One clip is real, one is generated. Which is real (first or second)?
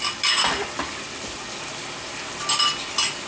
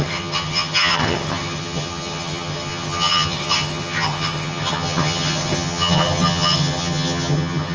first